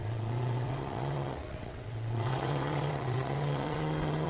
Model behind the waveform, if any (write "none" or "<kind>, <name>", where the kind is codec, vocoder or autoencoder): vocoder, WaveNeXt